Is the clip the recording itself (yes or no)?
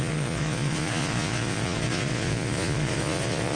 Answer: no